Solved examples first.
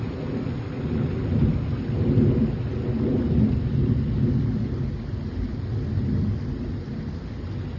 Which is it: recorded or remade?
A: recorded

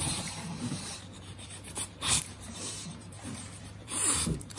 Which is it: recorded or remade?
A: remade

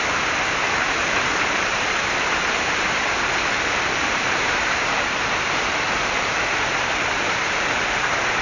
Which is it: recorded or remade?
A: remade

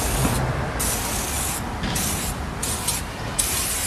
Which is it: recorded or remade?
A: recorded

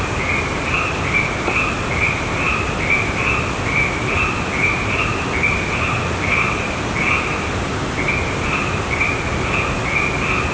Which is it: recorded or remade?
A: recorded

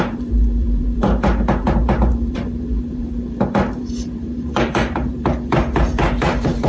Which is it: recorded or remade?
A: remade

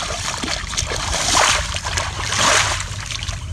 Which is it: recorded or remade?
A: remade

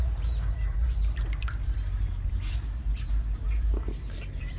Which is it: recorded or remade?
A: remade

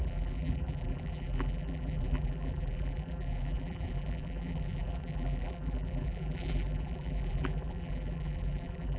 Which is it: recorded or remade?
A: remade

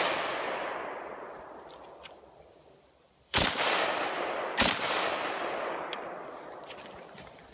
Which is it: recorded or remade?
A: remade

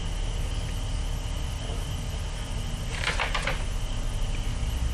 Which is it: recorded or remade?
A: recorded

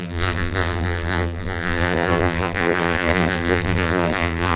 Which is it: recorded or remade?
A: remade